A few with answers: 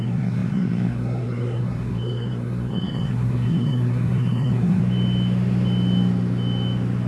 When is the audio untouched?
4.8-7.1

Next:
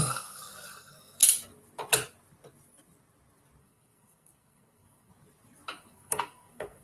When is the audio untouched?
1.2-3.6; 5.1-5.8

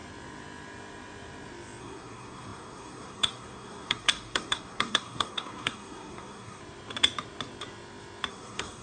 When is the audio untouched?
0.0-1.8; 6.6-8.3

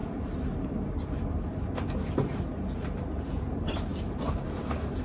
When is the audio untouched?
0.0-5.0

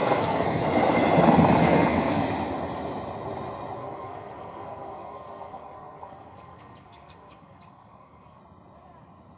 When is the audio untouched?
0.6-1.6; 2.2-3.8; 8.4-9.4

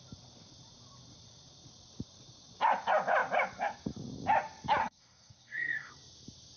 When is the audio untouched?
0.0-4.8; 5.9-6.6